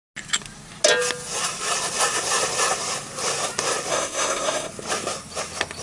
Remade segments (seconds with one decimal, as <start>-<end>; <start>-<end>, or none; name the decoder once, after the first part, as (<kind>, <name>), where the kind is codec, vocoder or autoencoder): 3.9-4.7 (codec, SNAC)